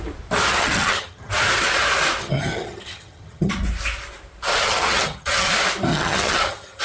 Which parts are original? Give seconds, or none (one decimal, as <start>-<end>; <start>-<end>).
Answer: 0.0-0.5; 1.3-2.2; 3.5-4.6; 5.5-5.9

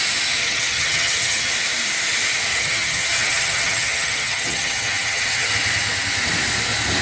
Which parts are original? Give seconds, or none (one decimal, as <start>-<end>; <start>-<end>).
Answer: 0.0-0.4; 1.5-2.5; 5.5-7.0